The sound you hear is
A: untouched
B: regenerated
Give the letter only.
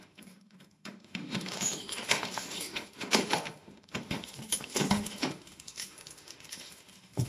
B